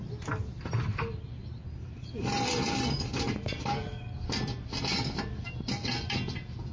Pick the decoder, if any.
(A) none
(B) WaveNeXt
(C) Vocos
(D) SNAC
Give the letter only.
A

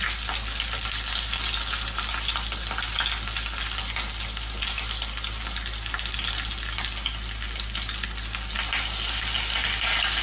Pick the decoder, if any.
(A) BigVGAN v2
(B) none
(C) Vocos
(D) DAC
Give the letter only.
B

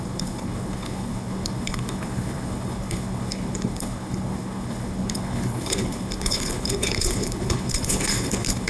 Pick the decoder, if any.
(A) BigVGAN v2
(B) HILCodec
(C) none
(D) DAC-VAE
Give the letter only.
B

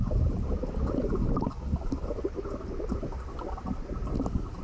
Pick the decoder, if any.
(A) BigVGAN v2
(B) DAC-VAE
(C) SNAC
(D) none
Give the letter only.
D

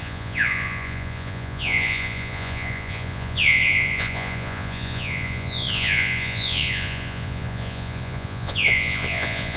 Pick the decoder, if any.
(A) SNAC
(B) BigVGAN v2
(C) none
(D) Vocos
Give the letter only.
D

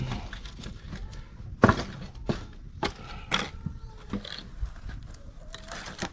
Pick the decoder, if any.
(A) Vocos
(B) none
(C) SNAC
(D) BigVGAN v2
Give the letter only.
B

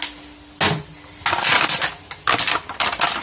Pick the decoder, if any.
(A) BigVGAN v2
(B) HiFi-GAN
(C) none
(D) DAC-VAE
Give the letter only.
C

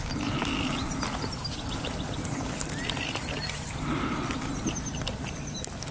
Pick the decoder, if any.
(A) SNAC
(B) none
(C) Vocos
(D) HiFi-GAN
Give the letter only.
B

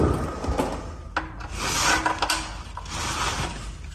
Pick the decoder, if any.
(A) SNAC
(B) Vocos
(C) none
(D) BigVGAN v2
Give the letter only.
C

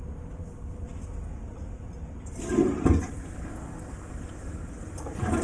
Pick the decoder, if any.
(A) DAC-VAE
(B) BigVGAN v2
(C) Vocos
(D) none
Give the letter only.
D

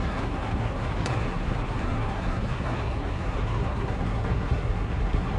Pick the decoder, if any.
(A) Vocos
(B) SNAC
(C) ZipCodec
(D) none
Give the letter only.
B